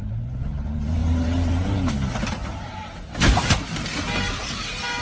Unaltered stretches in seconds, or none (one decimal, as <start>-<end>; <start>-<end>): none